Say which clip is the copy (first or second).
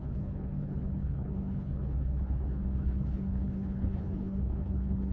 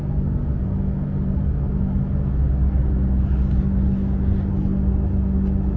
first